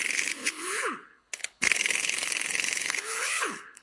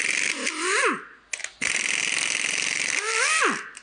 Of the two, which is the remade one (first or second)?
first